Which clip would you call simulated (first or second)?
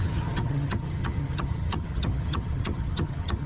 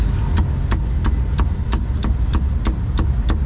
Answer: first